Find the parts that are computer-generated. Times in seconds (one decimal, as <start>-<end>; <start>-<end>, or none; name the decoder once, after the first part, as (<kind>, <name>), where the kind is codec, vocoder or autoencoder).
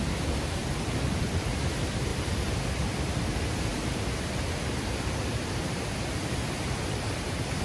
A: 2.1-3.1 (vocoder, BigVGAN v2)